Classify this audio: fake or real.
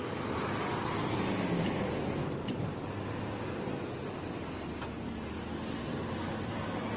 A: real